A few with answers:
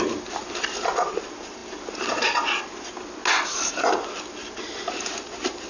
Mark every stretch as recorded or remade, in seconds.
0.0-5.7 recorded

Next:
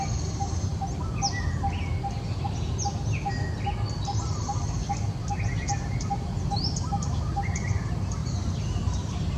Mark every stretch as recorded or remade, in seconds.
0.0-0.7 remade; 0.7-5.6 recorded; 5.6-8.2 remade; 8.2-8.9 recorded; 8.9-9.4 remade

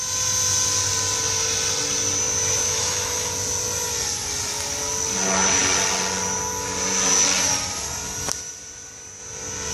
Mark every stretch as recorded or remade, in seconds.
0.0-2.6 recorded; 2.6-3.3 remade; 3.3-9.7 recorded

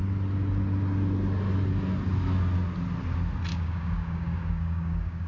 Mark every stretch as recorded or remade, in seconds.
0.0-3.5 recorded; 3.5-5.3 remade

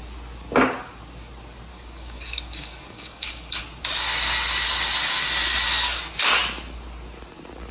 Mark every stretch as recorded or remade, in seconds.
0.0-1.7 recorded; 1.7-3.6 remade; 3.6-7.7 recorded

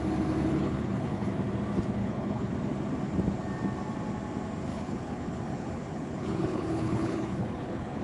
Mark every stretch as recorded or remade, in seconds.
0.0-0.5 recorded; 0.5-1.3 remade; 1.3-2.0 recorded; 2.0-2.5 remade; 2.5-4.7 recorded; 4.7-8.0 remade

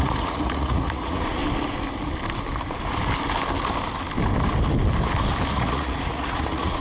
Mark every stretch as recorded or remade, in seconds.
0.0-1.4 remade; 1.4-5.5 recorded; 5.5-6.8 remade